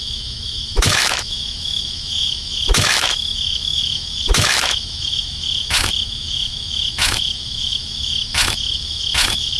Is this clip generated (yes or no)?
yes